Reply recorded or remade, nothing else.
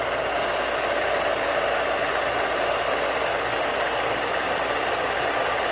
recorded